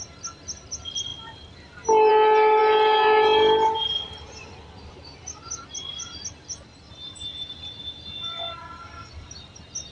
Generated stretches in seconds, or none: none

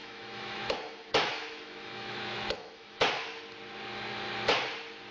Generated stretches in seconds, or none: 0.0-3.1 (autoencoder, DAC-VAE)

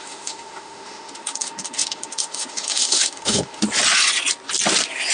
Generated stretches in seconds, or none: 0.0-3.6 (autoencoder, DAC-VAE)

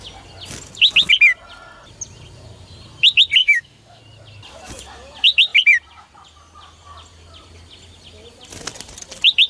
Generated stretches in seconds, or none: 3.4-4.0 (autoencoder, DAC-VAE)

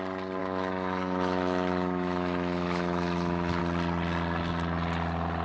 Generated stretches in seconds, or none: 0.4-3.6 (autoencoder, DAC-VAE)

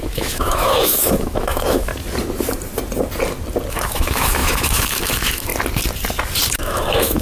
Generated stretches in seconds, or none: 0.0-1.9 (autoencoder, DAC-VAE); 3.7-5.5; 6.5-7.2